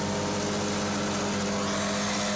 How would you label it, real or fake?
real